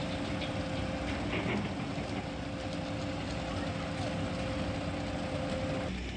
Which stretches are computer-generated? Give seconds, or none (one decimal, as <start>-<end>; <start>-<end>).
none